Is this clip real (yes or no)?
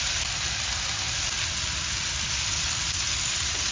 yes